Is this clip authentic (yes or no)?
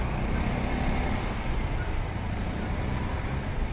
yes